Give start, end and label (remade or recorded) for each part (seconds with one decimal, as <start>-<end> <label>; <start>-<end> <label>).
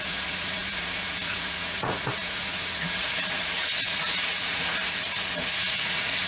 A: 0.0-6.3 remade